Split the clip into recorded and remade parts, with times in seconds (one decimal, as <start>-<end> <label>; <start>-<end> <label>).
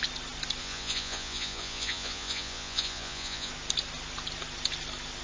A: 0.0-0.6 recorded; 0.6-3.5 remade; 3.5-5.2 recorded